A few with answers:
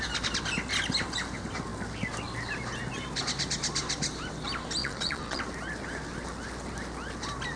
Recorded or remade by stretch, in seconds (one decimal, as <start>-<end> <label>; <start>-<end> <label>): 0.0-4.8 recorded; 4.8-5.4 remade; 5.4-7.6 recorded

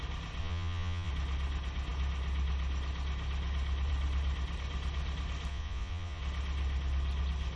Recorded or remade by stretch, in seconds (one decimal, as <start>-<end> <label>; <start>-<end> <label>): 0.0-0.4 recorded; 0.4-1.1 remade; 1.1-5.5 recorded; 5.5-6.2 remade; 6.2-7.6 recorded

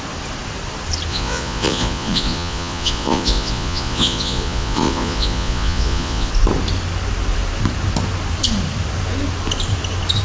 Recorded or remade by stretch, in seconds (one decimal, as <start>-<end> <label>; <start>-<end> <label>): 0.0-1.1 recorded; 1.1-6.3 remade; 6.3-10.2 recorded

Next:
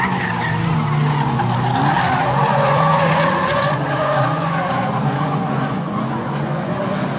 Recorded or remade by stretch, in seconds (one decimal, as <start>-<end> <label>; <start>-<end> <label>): 0.0-2.5 recorded; 2.5-6.8 remade; 6.8-7.2 recorded

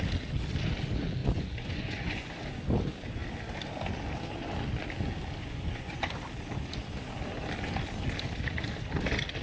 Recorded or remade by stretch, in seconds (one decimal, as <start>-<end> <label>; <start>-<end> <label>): 0.0-1.2 recorded; 1.2-2.3 remade; 2.3-5.4 recorded; 5.4-6.0 remade; 6.0-9.4 recorded

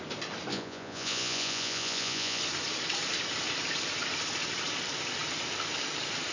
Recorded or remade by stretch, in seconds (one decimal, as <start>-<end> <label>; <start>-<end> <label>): 0.0-0.5 recorded; 0.5-2.4 remade; 2.4-6.3 recorded

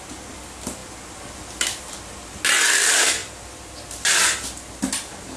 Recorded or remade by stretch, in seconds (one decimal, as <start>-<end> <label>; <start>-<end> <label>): 0.0-5.4 recorded

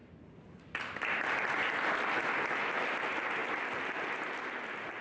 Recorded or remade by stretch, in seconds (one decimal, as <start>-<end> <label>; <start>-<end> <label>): 0.0-5.0 recorded